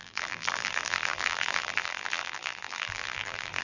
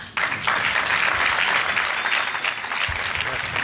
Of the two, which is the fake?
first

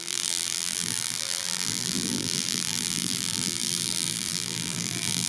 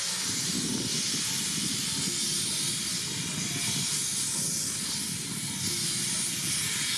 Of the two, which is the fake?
first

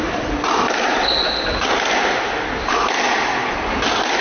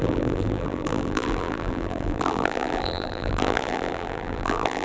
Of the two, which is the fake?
second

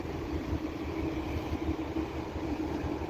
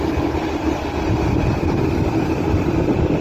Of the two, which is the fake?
first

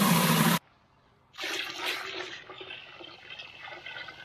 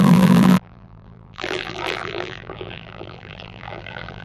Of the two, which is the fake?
second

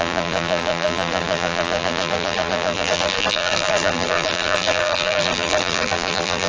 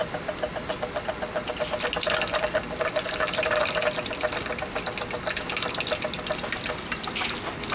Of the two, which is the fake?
first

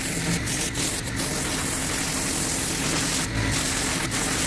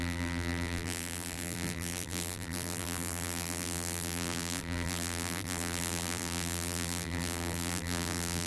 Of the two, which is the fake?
second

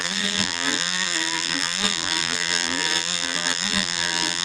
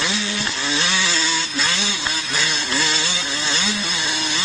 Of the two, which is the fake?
first